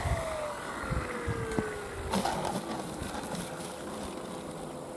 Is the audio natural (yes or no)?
yes